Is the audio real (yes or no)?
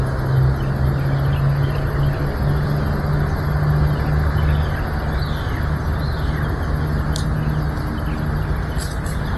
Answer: yes